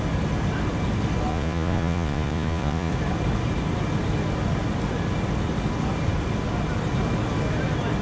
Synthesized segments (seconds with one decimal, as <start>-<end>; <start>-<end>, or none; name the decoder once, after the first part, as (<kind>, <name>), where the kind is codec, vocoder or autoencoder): 1.3-2.9 (vocoder, Vocos)